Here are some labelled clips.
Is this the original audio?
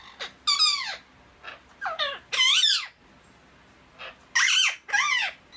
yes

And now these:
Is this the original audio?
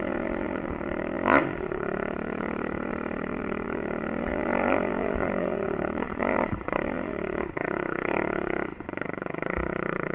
no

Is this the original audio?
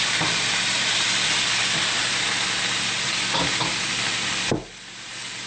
yes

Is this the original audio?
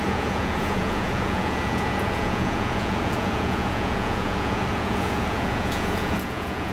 no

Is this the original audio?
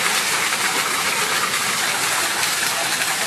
yes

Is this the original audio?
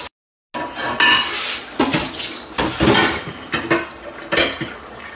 yes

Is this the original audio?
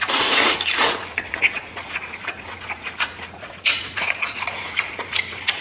no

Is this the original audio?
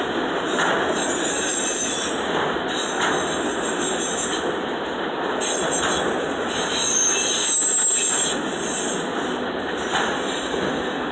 yes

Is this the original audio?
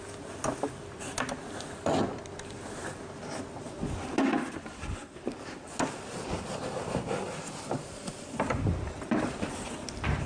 yes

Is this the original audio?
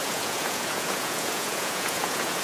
no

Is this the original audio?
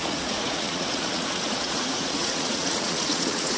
no